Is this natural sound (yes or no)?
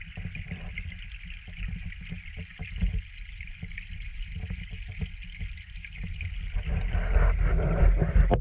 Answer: yes